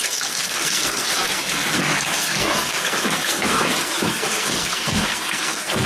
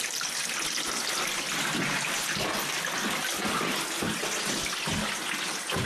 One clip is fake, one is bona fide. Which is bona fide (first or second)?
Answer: second